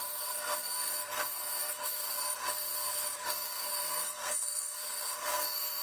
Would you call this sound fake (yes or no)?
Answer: yes